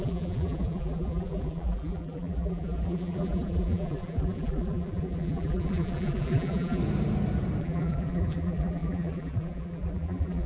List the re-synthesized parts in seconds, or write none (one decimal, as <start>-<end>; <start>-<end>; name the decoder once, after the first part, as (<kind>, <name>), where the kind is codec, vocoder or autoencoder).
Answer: 0.0-6.8 (vocoder, BigVGAN v2); 7.6-10.5